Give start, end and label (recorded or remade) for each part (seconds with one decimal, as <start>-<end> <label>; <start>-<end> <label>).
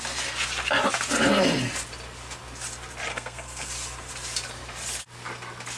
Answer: 0.0-3.1 recorded; 3.1-3.7 remade; 3.7-5.8 recorded